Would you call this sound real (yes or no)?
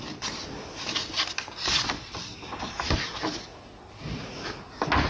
yes